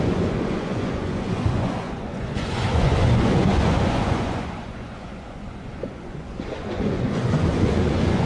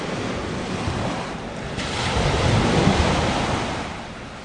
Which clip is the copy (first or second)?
first